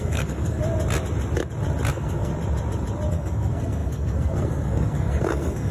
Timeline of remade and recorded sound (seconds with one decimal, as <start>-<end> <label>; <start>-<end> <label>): 0.0-0.6 remade; 0.6-1.9 recorded; 1.9-2.3 remade; 2.3-3.1 recorded; 3.1-5.7 remade